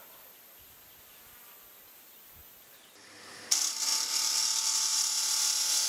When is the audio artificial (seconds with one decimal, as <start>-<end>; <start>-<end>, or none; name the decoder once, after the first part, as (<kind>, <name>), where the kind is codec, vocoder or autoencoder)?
4.9-5.9 (vocoder, BigVGAN v2)